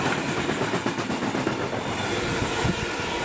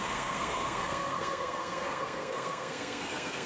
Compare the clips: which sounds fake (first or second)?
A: second